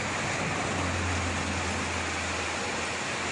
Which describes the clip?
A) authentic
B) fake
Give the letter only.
A